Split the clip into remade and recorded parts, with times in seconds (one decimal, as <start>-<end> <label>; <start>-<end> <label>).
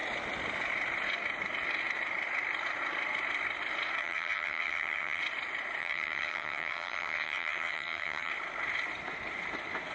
0.0-4.0 recorded; 4.0-5.2 remade; 5.2-5.8 recorded; 5.8-8.3 remade; 8.3-9.9 recorded